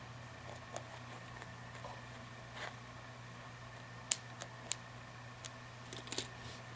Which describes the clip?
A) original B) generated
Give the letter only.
A